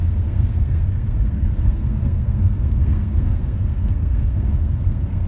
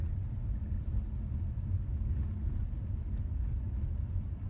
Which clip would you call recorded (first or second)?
second